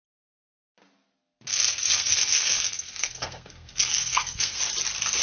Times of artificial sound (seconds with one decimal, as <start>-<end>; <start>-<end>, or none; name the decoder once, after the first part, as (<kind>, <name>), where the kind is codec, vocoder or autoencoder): 1.5-4.6 (codec, SNAC)